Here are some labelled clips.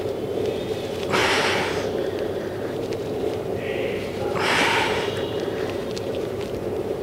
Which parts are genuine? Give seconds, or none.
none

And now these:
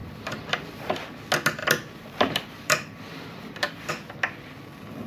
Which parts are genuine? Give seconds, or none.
0.9-1.6; 3.9-5.1

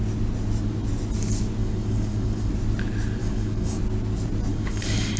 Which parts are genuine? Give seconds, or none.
0.0-1.6; 2.5-3.2; 3.8-4.5

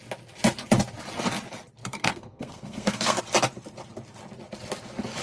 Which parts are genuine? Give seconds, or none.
0.0-1.8; 3.2-5.2

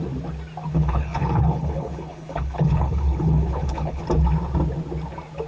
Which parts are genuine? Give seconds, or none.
0.0-0.7; 4.0-5.5